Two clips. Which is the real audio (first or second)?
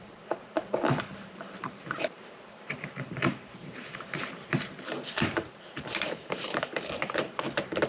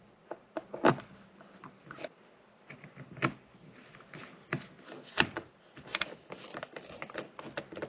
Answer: second